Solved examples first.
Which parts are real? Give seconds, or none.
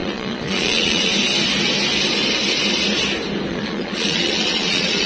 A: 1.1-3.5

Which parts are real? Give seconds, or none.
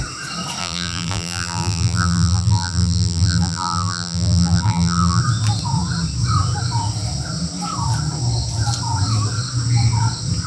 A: 0.0-0.6; 5.2-10.5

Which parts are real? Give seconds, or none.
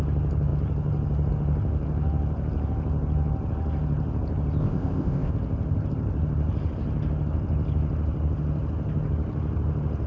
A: 0.0-4.6; 5.3-10.1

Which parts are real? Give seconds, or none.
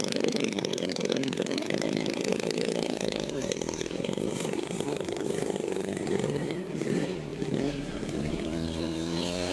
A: none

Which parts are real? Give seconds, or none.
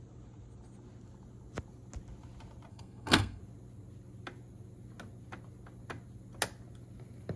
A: 0.0-2.7; 3.4-7.4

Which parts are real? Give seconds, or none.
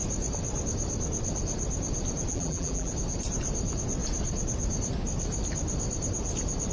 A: 0.0-2.3; 2.9-6.7